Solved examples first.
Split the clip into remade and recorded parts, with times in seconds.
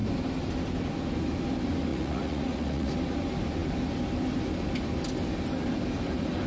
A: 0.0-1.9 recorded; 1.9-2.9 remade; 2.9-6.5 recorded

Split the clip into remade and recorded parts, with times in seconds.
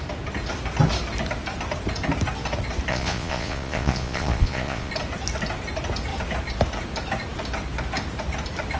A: 0.0-2.9 recorded; 2.9-4.9 remade; 4.9-8.8 recorded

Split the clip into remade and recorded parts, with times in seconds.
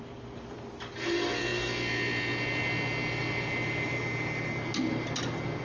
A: 0.0-5.6 recorded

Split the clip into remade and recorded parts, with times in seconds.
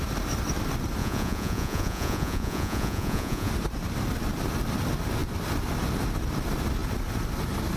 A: 0.0-1.0 recorded; 1.0-3.5 remade; 3.5-7.8 recorded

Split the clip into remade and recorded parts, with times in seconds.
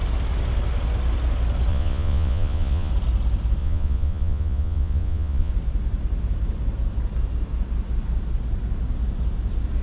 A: 0.0-1.7 recorded; 1.7-2.9 remade; 2.9-3.6 recorded; 3.6-5.5 remade; 5.5-9.8 recorded